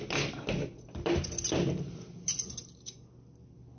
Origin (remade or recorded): recorded